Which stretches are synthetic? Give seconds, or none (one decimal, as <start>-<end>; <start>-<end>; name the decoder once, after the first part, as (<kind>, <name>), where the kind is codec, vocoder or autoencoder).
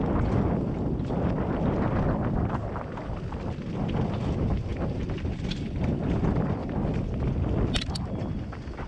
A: none